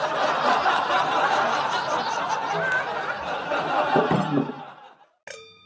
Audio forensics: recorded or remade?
recorded